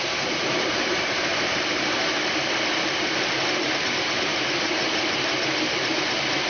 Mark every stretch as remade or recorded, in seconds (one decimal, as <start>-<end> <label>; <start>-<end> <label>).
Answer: 0.0-6.5 remade